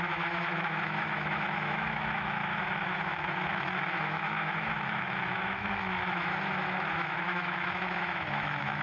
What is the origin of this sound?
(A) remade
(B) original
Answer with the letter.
A